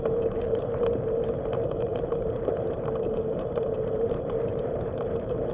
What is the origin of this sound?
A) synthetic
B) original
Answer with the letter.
A